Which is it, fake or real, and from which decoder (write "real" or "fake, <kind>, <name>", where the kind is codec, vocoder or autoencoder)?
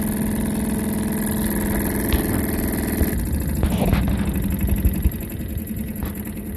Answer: real